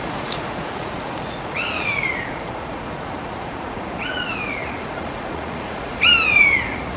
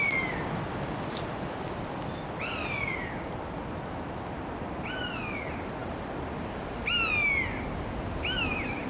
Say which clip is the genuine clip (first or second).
second